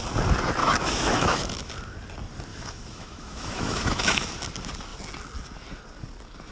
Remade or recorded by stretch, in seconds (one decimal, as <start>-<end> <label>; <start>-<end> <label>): 0.0-0.6 recorded; 0.6-1.7 remade; 1.7-2.5 recorded; 2.5-4.3 remade; 4.3-6.5 recorded